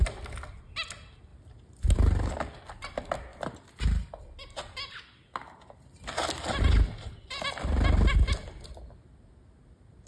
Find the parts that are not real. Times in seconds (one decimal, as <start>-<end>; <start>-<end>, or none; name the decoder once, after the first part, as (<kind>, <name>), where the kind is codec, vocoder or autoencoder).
none